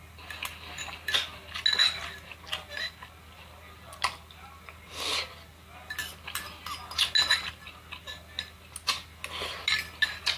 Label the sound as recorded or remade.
recorded